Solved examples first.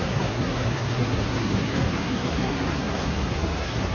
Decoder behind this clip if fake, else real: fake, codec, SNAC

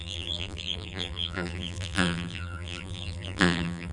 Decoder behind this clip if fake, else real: fake, vocoder, BigVGAN v2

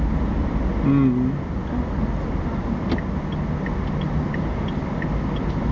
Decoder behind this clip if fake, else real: real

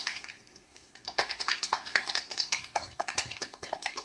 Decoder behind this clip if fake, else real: fake, codec, SNAC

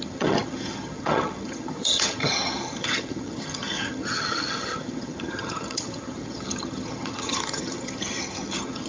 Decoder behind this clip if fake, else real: fake, vocoder, HiFi-GAN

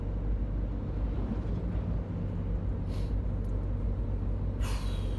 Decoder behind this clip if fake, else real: real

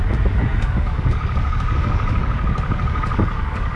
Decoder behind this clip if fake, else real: fake, codec, DAC